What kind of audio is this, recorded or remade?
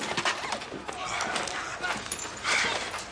recorded